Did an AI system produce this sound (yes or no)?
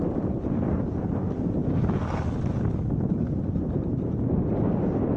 no